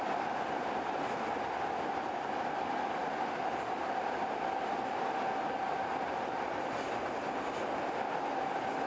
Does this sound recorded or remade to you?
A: recorded